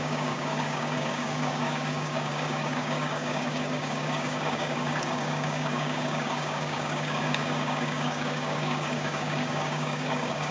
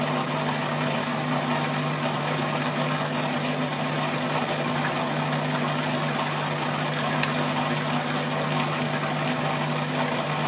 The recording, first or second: second